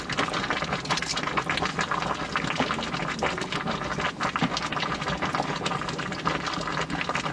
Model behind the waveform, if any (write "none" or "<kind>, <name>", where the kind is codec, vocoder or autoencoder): none